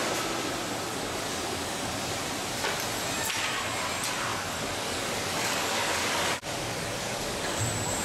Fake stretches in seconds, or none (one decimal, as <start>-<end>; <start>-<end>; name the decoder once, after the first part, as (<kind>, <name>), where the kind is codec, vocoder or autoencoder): 0.9-1.9 (codec, DAC); 4.3-7.6